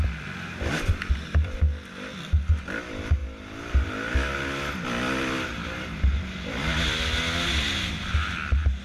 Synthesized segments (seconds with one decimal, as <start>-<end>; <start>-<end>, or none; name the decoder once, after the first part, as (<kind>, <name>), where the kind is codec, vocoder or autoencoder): none